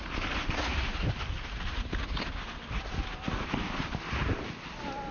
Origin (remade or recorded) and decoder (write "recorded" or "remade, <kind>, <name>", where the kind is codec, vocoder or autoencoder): recorded